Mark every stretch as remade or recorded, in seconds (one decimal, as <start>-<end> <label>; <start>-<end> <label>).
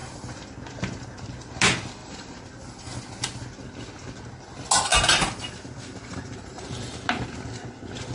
0.0-0.5 remade; 0.5-2.0 recorded; 2.0-3.0 remade; 3.0-4.9 recorded; 4.9-6.7 remade; 6.7-8.1 recorded